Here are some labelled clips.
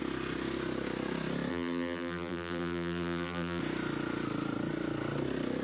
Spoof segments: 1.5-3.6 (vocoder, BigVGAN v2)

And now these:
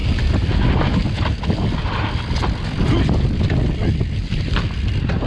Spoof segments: none

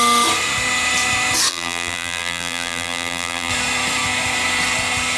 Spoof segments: 1.5-3.5 (vocoder, BigVGAN v2)

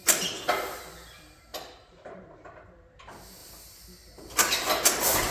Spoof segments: 1.5-3.0 (vocoder, BigVGAN v2)

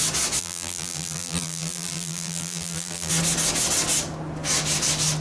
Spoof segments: 0.4-3.1 (vocoder, BigVGAN v2)